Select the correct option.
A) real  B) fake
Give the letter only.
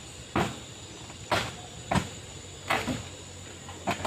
A